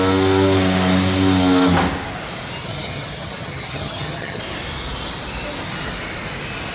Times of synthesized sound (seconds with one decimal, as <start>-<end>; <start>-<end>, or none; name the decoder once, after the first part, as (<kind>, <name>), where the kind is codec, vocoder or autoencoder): 2.6-4.4 (vocoder, HiFi-GAN)